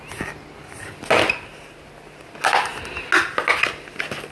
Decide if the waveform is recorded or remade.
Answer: recorded